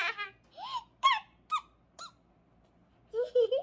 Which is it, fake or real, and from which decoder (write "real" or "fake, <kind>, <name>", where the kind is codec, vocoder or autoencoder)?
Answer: real